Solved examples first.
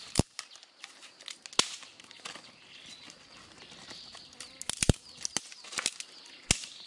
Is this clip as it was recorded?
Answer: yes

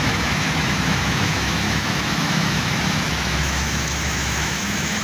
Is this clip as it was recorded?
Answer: no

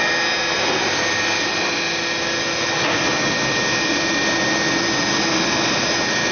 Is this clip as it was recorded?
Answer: yes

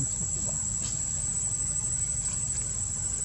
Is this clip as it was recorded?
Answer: yes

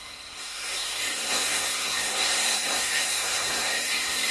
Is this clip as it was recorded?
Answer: no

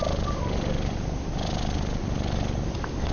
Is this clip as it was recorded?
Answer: no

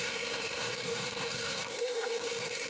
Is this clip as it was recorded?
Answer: no